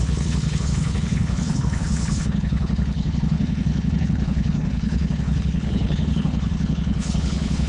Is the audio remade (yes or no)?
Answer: yes